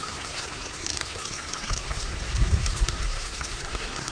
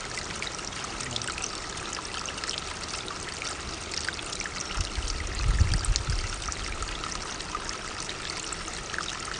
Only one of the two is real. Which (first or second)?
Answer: second